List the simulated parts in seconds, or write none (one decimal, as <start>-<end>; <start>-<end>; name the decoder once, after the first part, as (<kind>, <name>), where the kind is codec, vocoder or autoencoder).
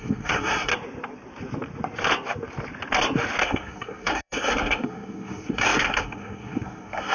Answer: 0.0-0.7 (codec, SNAC); 3.4-7.1